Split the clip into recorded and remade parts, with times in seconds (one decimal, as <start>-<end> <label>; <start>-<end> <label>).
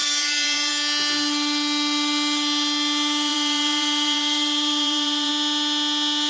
0.0-0.7 remade; 0.7-3.3 recorded; 3.3-5.3 remade; 5.3-6.3 recorded